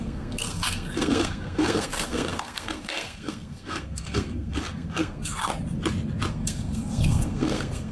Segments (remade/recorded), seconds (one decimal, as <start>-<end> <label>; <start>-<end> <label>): 0.0-5.5 remade; 5.5-6.3 recorded; 6.3-7.9 remade